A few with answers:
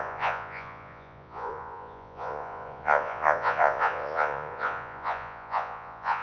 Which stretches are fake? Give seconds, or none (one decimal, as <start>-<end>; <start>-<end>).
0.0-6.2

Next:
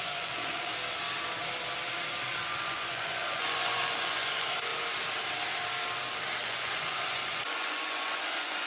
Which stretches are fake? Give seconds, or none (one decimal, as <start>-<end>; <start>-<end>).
0.0-0.7; 2.4-4.7; 6.4-8.7

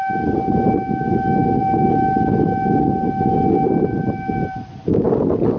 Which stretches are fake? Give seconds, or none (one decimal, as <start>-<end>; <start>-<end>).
none

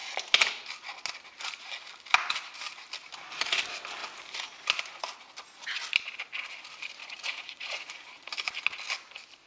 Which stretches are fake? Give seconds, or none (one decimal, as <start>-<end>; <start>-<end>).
7.0-8.3

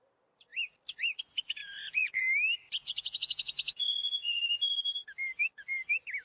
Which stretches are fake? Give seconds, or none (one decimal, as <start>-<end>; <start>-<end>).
1.6-2.2; 2.8-4.4

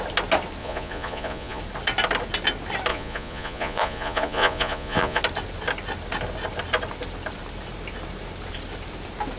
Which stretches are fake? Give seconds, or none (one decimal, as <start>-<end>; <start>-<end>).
0.6-1.6; 2.9-5.2